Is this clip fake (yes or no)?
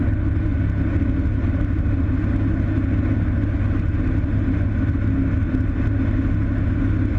no